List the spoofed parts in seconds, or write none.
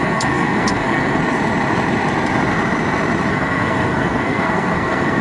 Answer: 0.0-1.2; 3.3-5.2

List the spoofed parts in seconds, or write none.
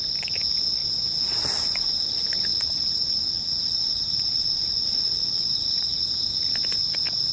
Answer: 2.5-6.0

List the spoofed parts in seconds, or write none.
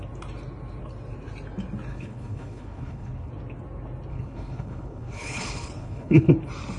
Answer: 1.9-3.3; 4.1-6.3